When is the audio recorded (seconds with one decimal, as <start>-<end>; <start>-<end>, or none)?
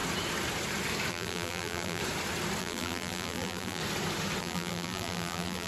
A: 0.0-1.1; 2.0-2.6; 3.8-4.4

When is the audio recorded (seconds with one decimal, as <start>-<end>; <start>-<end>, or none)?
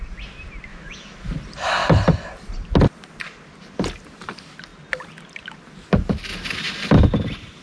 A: 0.0-0.7; 1.3-7.6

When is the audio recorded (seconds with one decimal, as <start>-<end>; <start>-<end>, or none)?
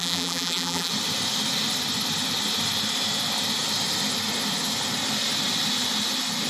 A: 0.9-6.5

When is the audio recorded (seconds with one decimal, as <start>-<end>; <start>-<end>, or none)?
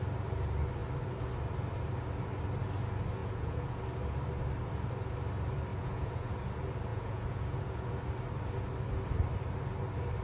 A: 0.0-3.2; 3.8-5.7; 6.3-6.9; 7.9-10.2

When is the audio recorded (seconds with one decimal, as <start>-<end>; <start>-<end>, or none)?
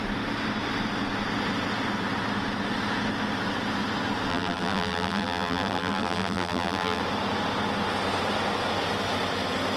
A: 0.0-4.3; 7.0-9.8